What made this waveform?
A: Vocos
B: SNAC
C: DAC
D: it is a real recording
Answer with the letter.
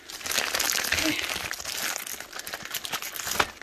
D